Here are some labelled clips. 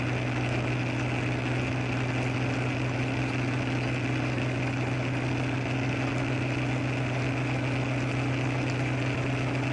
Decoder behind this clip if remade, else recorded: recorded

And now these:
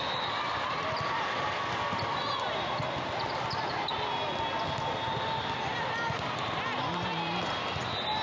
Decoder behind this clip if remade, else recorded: recorded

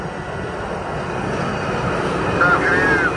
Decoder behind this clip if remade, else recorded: recorded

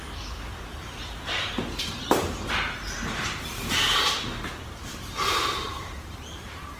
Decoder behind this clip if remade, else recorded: remade, vocoder, BigVGAN v2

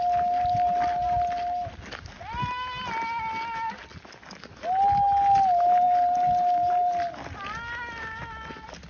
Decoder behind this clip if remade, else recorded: recorded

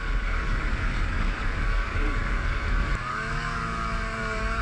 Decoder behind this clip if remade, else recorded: remade, codec, DAC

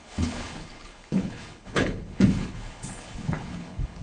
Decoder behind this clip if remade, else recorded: remade, codec, HILCodec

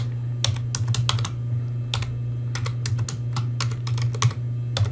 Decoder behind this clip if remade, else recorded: recorded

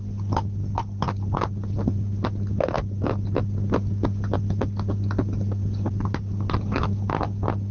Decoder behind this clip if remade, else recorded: recorded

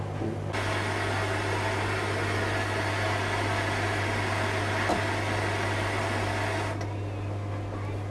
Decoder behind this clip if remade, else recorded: recorded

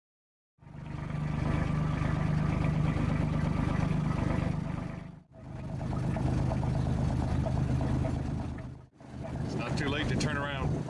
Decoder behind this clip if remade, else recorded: recorded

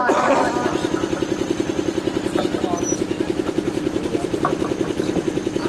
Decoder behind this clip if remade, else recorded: recorded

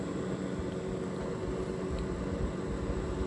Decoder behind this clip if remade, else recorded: recorded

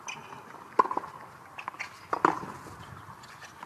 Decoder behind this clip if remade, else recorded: recorded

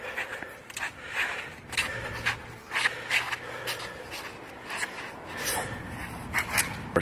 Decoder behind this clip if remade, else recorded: recorded